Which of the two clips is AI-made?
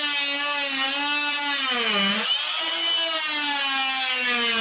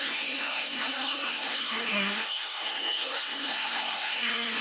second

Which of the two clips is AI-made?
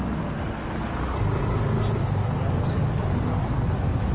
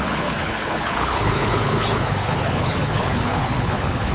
second